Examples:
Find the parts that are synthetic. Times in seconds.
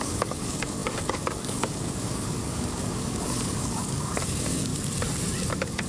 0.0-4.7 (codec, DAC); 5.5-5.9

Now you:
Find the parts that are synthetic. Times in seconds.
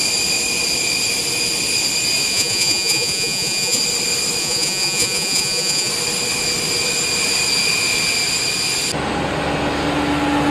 2.3-3.8 (vocoder, Vocos); 4.4-5.9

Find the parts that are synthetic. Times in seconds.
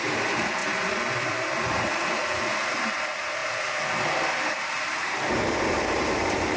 0.0-6.6 (vocoder, BigVGAN v2)